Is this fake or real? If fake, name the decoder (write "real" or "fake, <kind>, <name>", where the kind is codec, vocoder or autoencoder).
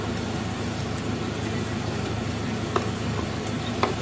real